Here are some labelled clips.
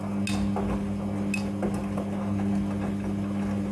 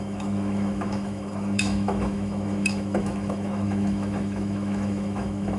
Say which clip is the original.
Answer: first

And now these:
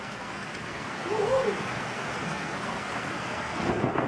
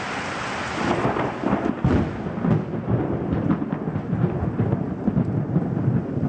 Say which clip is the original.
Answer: second